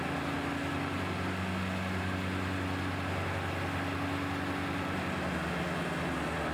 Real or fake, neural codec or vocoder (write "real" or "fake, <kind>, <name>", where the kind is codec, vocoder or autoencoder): real